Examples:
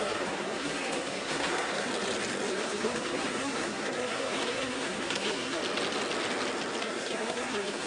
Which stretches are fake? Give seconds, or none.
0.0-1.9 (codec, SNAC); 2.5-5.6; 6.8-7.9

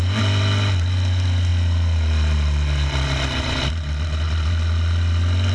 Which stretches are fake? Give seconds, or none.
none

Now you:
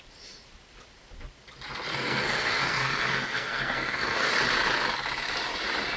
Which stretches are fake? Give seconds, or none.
1.9-4.3 (codec, SNAC)

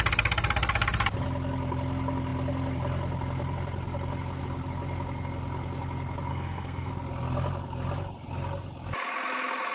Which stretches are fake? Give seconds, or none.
6.3-6.9 (codec, SNAC)

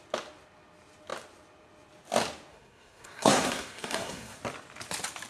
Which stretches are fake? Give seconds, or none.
2.5-4.4 (codec, SNAC)

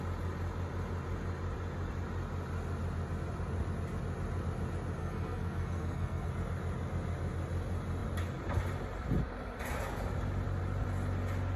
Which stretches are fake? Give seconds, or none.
5.0-6.3 (codec, SNAC)

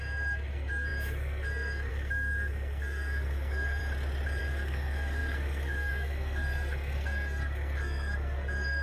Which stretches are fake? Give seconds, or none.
0.0-3.8 (codec, SNAC); 4.4-8.8

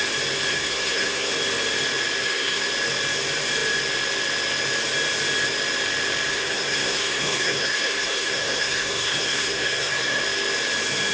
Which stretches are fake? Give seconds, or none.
0.5-1.3 (codec, SNAC); 2.2-2.7; 6.3-10.2